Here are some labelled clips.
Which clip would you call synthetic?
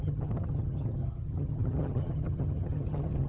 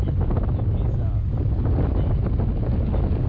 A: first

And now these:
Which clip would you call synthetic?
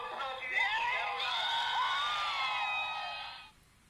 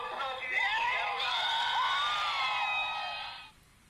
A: second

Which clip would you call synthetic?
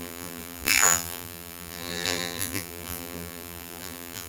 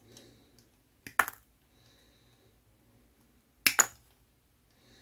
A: first